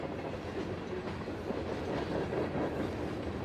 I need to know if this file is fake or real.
real